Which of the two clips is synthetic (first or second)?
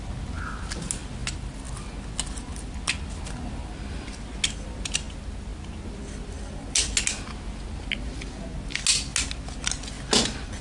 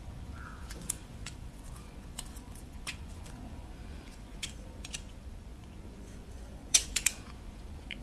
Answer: second